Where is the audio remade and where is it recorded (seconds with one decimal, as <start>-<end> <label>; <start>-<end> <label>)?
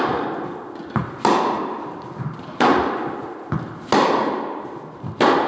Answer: 0.0-5.5 recorded